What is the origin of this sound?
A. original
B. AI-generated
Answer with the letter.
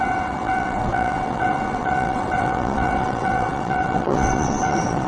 B